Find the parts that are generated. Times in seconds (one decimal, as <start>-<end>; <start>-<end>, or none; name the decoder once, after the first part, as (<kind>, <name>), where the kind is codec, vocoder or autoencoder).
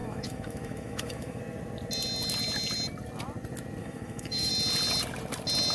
0.0-1.4 (autoencoder, DAC-VAE); 3.8-4.5